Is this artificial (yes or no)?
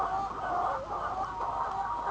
no